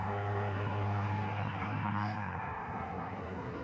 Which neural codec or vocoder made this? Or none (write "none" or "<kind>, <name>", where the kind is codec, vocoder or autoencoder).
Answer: codec, SNAC